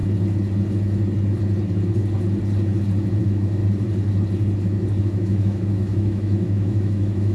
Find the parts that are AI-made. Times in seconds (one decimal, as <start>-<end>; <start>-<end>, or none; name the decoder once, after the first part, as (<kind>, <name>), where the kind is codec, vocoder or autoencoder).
3.2-3.6 (autoencoder, DAC-VAE); 5.0-7.3

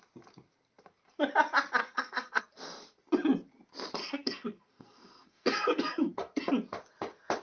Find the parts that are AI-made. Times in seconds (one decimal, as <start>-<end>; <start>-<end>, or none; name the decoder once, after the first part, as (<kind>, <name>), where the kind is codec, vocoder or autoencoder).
1.8-2.4 (codec, SNAC); 4.0-6.5

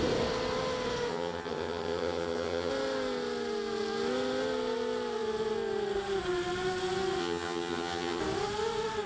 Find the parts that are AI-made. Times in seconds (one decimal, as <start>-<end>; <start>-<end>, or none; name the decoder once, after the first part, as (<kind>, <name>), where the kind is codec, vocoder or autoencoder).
1.1-2.7 (vocoder, HiFi-GAN); 7.2-8.2

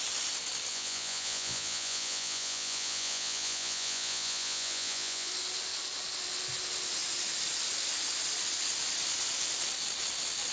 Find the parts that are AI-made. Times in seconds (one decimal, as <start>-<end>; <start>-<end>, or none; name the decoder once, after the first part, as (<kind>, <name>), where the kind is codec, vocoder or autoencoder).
0.7-5.3 (vocoder, Vocos)

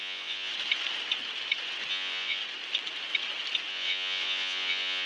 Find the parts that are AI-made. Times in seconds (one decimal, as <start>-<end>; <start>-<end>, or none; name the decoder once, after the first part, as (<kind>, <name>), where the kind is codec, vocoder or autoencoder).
0.0-0.5 (vocoder, Vocos); 1.9-2.4; 3.7-5.1

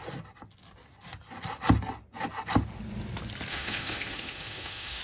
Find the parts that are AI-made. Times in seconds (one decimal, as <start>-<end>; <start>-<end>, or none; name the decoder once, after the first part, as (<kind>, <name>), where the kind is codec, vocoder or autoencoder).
3.5-5.0 (autoencoder, DAC-VAE)

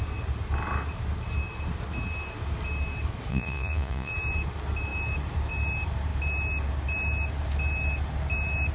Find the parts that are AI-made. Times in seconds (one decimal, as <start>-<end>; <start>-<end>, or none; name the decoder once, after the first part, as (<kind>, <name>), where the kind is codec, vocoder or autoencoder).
3.3-4.1 (vocoder, Vocos)